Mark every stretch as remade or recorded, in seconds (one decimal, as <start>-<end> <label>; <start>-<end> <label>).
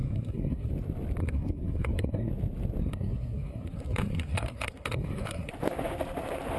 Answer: 0.0-0.7 remade; 0.7-1.2 recorded; 1.2-2.3 remade; 2.3-2.8 recorded; 2.8-5.5 remade; 5.5-6.6 recorded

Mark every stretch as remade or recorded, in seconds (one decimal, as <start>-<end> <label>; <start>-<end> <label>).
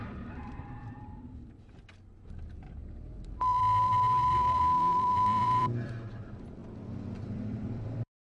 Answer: 0.0-6.6 remade; 6.6-7.2 recorded; 7.2-8.3 remade